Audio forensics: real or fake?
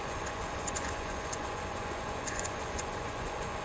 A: fake